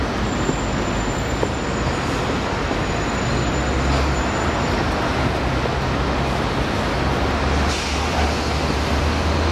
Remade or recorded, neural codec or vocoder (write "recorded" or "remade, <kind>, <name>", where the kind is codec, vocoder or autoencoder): recorded